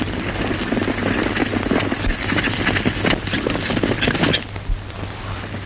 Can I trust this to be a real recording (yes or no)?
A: yes